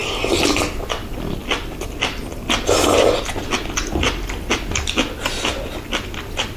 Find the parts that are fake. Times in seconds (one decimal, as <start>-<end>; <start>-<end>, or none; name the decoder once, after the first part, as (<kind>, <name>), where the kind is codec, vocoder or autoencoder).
0.0-1.4 (vocoder, BigVGAN v2); 4.5-6.6